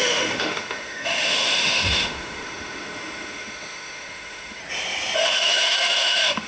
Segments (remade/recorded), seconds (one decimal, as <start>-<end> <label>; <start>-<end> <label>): 0.0-4.6 remade; 4.6-5.2 recorded; 5.2-6.5 remade